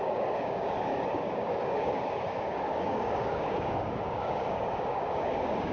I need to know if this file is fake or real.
fake